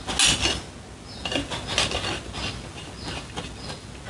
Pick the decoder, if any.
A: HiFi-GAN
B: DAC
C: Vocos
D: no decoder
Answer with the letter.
D